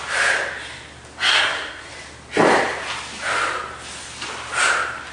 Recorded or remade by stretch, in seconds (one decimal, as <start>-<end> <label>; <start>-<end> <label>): 0.0-1.3 recorded; 1.3-1.9 remade; 1.9-5.1 recorded